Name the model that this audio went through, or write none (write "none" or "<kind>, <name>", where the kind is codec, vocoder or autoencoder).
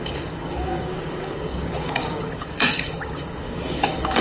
codec, DAC